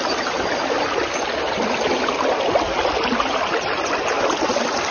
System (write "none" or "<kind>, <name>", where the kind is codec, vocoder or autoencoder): none